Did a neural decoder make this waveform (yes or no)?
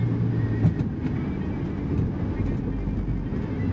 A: no